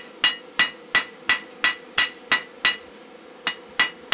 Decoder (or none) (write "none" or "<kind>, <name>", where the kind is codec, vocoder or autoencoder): none